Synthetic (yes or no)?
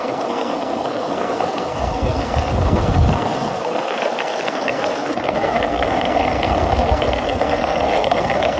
yes